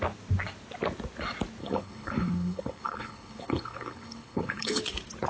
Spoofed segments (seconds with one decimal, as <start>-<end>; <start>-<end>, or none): 1.6-4.8